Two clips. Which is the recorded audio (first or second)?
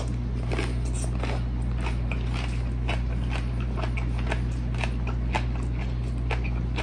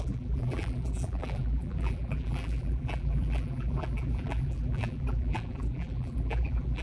first